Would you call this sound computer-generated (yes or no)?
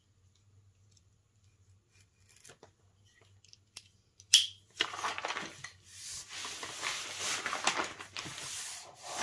no